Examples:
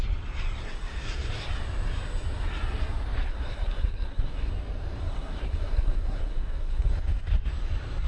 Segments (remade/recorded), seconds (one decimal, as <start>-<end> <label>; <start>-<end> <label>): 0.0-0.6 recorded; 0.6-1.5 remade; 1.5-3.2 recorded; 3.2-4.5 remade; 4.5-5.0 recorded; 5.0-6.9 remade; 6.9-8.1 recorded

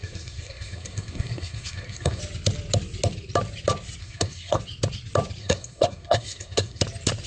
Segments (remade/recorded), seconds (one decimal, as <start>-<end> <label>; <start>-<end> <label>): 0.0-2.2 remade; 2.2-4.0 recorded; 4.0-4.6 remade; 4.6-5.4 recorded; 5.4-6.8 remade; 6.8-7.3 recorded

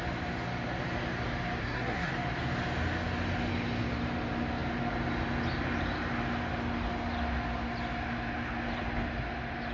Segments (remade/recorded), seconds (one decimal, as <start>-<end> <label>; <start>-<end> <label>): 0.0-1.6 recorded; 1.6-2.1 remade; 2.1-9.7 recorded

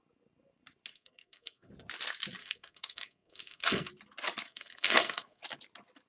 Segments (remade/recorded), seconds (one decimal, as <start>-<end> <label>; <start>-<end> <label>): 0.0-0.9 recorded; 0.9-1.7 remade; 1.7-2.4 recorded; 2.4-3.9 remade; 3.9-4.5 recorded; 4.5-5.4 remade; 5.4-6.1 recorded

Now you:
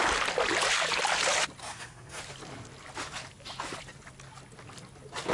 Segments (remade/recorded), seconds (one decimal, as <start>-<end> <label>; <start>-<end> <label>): 0.0-1.6 recorded; 1.6-2.2 remade; 2.2-5.3 recorded

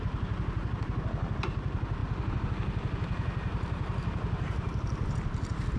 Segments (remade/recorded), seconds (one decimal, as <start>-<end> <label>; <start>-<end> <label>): 0.0-5.8 recorded